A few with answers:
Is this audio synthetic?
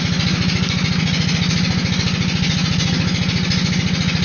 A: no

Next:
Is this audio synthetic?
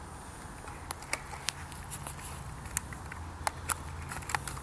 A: no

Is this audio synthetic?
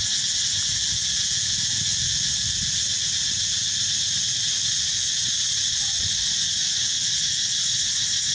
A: no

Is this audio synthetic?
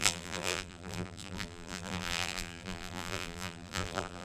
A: yes